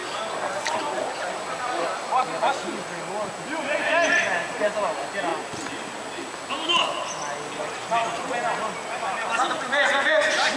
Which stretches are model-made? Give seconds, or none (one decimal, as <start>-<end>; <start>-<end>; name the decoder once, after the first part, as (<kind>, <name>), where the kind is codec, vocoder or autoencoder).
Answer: none